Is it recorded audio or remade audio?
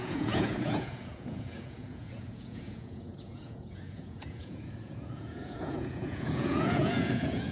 remade